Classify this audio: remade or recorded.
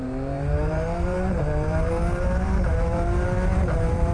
remade